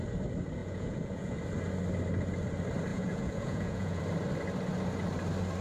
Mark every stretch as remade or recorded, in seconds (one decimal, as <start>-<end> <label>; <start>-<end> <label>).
0.0-0.6 recorded; 0.6-1.4 remade; 1.4-2.9 recorded; 2.9-4.0 remade; 4.0-5.6 recorded